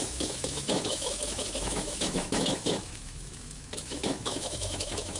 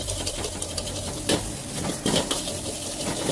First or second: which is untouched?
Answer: second